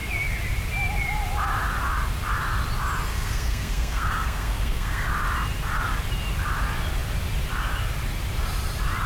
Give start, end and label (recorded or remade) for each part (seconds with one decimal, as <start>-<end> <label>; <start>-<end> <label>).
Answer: 0.0-3.1 recorded; 3.1-5.1 remade; 5.1-9.1 recorded